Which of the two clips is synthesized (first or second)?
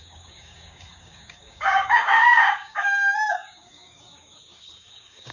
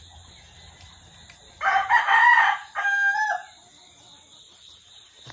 first